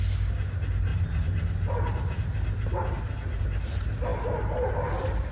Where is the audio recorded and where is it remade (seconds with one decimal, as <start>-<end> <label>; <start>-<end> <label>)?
0.0-5.3 recorded